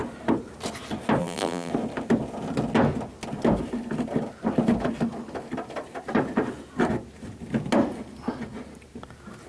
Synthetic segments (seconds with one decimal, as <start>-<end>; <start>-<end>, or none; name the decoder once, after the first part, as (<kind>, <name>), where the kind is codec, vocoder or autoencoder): 1.2-1.7 (vocoder, BigVGAN v2)